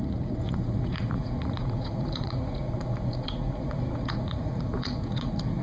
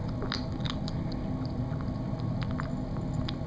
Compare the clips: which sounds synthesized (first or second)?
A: first